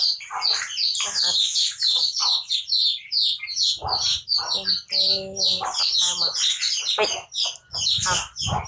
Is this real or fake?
real